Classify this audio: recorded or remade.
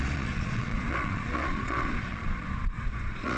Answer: remade